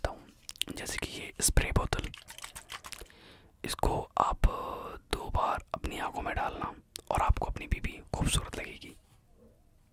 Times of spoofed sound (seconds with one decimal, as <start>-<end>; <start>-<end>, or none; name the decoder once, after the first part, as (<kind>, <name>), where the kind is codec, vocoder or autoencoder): none